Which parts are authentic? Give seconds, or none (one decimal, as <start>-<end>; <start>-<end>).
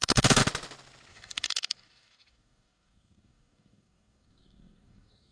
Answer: 0.4-1.1